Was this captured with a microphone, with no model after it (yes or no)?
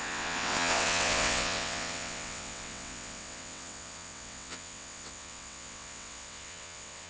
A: no